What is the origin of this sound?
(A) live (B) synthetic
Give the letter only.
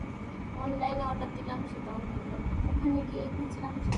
B